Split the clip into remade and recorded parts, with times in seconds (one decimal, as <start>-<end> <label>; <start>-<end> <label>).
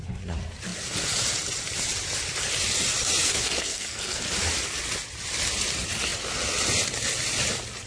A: 0.0-3.2 recorded; 3.2-4.2 remade; 4.2-7.9 recorded